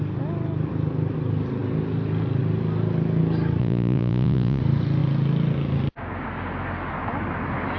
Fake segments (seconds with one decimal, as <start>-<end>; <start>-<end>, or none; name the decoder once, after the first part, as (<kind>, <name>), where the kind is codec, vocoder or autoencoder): 3.6-4.6 (vocoder, Vocos)